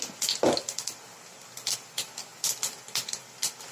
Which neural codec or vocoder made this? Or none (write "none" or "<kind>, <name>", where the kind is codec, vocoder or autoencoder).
none